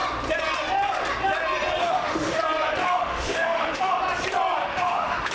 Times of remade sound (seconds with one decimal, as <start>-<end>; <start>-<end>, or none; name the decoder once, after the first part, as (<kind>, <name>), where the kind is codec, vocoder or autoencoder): 1.8-2.4 (autoencoder, DAC-VAE); 2.8-4.0; 4.6-5.3